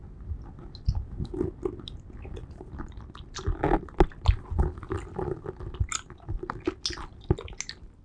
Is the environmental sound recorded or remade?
recorded